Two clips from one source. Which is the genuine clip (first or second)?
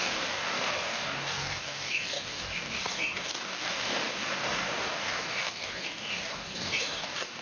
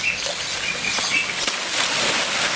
second